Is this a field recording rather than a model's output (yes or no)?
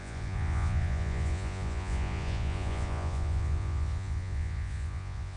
no